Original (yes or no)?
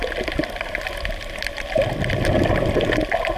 yes